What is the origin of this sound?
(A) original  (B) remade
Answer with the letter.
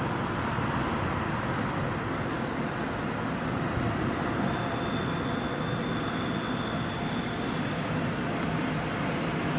A